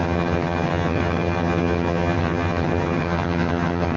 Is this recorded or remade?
remade